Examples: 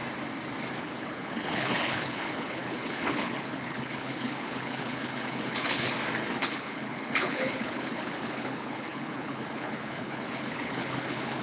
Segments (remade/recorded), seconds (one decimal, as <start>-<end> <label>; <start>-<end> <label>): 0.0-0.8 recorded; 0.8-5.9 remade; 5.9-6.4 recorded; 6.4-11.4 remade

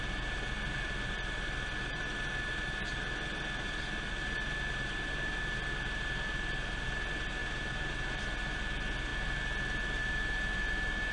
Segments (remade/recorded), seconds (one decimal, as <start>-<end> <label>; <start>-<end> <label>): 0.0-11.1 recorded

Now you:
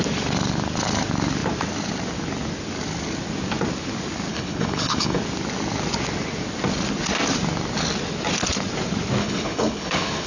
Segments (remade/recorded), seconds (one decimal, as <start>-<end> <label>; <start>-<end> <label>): 0.0-4.3 recorded; 4.3-5.2 remade; 5.2-9.2 recorded; 9.2-10.3 remade

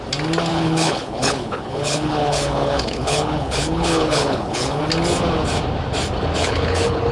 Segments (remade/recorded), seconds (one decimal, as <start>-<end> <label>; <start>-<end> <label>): 0.0-0.5 recorded; 0.5-4.8 remade; 4.8-6.4 recorded; 6.4-7.1 remade

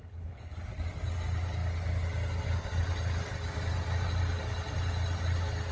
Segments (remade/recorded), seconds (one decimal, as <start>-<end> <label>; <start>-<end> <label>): 0.0-0.5 remade; 0.5-5.7 recorded

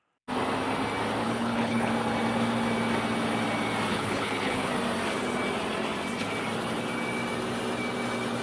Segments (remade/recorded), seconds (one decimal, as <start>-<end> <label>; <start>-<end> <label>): 0.0-1.2 recorded; 1.2-1.9 remade; 1.9-3.9 recorded; 3.9-4.7 remade; 4.7-8.4 recorded

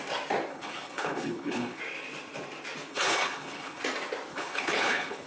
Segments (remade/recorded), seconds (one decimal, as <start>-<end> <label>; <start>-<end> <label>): 0.0-0.5 recorded; 0.5-1.8 remade; 1.8-2.9 recorded; 2.9-3.8 remade; 3.8-4.3 recorded; 4.3-5.3 remade